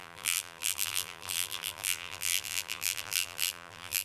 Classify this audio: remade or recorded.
remade